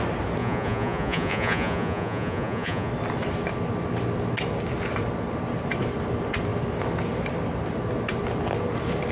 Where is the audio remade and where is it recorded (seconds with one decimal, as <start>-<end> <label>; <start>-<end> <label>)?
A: 0.0-0.4 recorded; 0.4-2.9 remade; 2.9-9.1 recorded